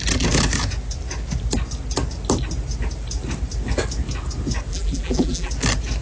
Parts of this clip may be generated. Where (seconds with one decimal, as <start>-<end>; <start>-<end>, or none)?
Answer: 4.7-5.5